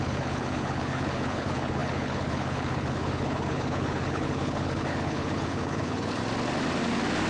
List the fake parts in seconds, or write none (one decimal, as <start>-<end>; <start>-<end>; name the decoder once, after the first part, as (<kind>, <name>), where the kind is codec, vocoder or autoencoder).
0.0-6.2 (codec, HILCodec)